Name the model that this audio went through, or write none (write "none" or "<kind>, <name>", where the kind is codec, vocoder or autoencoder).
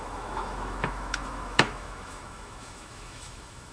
autoencoder, DAC-VAE